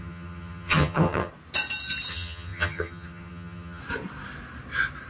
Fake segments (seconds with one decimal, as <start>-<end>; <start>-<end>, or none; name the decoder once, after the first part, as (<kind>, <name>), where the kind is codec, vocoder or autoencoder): 0.0-1.3 (vocoder, HiFi-GAN); 2.1-3.8